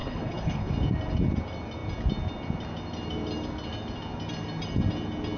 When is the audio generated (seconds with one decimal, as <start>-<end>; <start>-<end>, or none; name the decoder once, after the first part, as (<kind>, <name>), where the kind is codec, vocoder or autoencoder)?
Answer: 0.0-0.7 (codec, HILCodec)